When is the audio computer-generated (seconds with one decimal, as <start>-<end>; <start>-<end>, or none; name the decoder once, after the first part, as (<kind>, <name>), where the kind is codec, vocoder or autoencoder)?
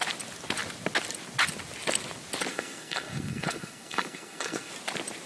2.5-4.7 (codec, SNAC)